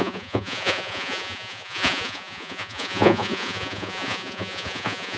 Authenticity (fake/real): fake